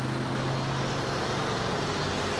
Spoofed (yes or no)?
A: no